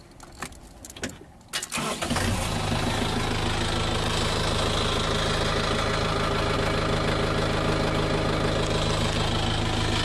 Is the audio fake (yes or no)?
no